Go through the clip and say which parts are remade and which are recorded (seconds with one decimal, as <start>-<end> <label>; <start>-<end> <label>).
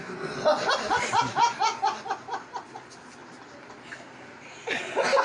0.0-0.5 recorded; 0.5-1.5 remade; 1.5-5.2 recorded